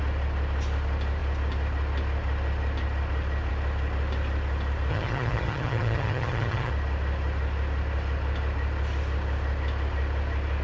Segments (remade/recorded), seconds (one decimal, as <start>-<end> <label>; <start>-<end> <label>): 0.0-4.9 recorded; 4.9-6.7 remade; 6.7-10.6 recorded